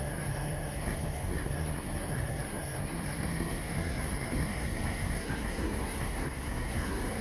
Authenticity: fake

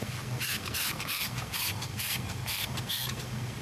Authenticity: fake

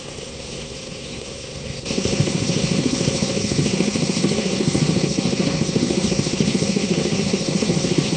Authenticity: fake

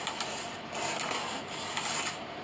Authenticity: real